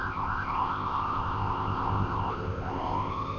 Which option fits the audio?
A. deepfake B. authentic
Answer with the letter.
A